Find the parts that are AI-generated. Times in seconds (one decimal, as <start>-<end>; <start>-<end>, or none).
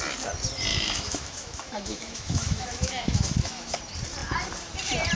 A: 0.7-3.8